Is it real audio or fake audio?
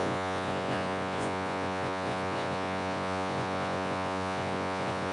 fake